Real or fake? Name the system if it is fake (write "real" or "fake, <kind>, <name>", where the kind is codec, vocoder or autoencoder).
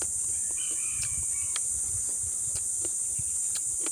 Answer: real